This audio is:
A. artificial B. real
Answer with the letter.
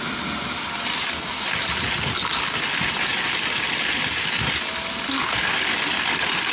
B